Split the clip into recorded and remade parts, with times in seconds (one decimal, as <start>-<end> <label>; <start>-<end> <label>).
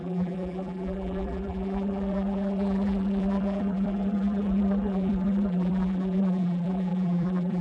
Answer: 0.0-7.6 remade